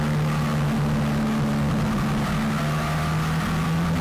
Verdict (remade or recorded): recorded